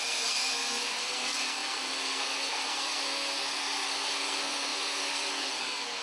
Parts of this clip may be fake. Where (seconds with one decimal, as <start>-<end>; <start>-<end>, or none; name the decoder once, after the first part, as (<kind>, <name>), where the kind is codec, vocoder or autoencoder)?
0.0-6.0 (codec, SNAC)